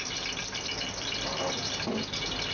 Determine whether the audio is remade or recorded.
recorded